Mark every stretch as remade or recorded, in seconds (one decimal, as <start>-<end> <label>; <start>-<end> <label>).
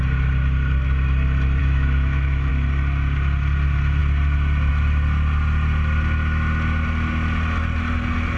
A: 0.0-1.6 recorded; 1.6-2.5 remade; 2.5-8.4 recorded